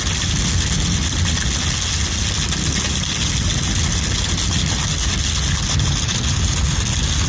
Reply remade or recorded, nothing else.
recorded